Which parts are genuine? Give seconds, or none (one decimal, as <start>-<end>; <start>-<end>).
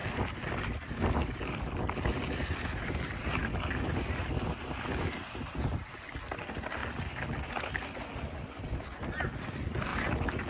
1.4-10.5